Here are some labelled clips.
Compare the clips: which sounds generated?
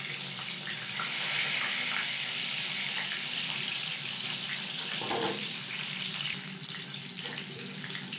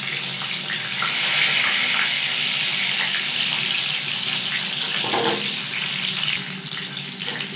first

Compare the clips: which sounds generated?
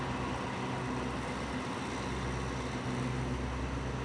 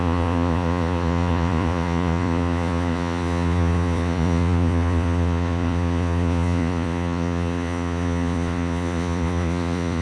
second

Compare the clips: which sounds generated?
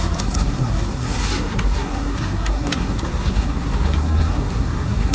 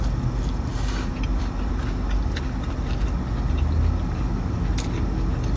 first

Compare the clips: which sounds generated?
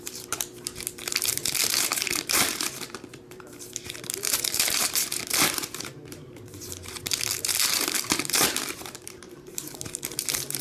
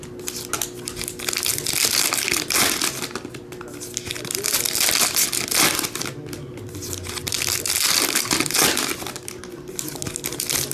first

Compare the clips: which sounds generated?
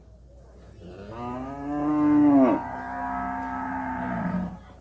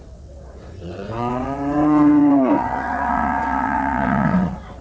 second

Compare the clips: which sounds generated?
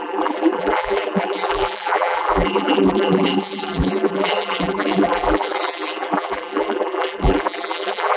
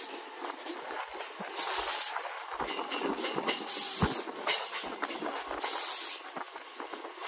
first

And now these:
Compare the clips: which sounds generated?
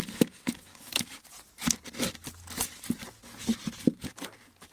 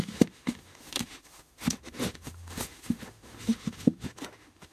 second